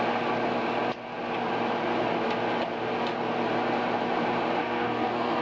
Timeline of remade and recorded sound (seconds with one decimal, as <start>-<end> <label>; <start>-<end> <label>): 0.0-4.6 recorded; 4.6-5.4 remade